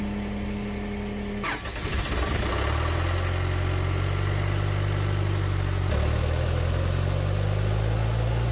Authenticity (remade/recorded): recorded